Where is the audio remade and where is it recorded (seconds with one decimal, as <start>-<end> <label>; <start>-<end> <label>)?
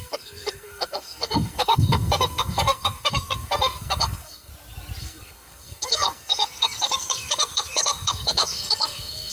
0.0-4.5 remade; 4.5-5.0 recorded; 5.0-9.3 remade